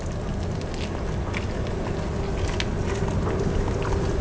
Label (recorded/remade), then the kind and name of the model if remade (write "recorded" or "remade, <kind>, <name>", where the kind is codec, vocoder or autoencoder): recorded